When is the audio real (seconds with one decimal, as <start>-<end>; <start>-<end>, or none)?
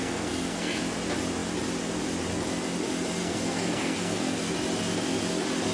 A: 0.8-3.2; 4.5-5.7